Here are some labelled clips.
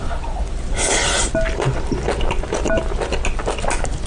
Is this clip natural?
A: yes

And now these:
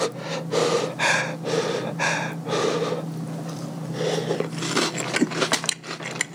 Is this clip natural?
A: yes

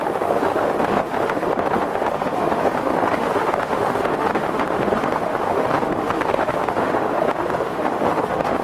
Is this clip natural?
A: no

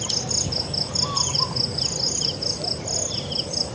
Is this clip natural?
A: yes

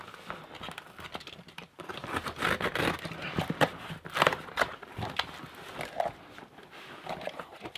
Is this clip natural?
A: yes